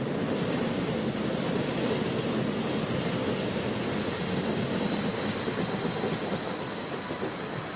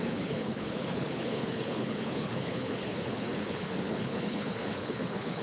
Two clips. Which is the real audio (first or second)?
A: first